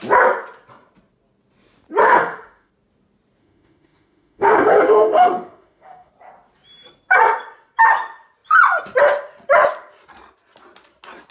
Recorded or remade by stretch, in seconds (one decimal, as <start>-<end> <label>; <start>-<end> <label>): 0.0-2.0 recorded; 2.0-2.7 remade; 2.7-3.4 recorded; 3.4-6.1 remade; 6.1-11.3 recorded